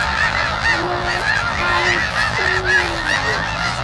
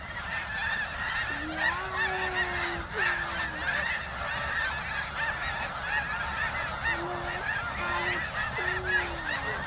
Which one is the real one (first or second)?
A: second